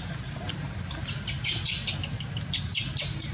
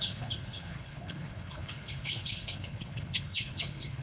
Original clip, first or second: first